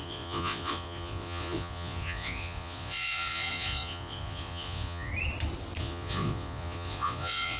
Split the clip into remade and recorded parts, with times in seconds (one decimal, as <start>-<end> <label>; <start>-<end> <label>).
0.0-5.1 remade; 5.1-5.8 recorded; 5.8-7.6 remade